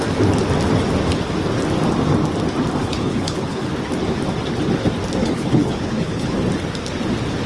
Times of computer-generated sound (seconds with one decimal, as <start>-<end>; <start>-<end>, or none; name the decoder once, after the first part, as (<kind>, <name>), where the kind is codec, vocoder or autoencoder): 2.8-3.7 (codec, HILCodec); 5.2-6.4